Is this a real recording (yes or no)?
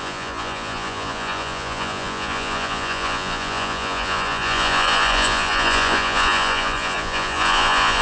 no